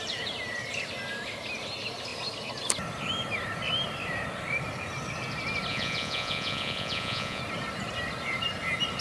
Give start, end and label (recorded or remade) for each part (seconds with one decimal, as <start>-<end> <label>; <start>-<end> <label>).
0.0-5.7 recorded; 5.7-7.4 remade; 7.4-9.0 recorded